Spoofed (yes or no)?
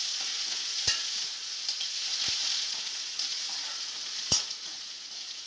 yes